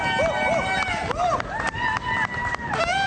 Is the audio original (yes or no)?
yes